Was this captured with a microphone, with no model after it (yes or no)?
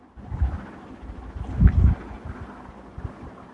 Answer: yes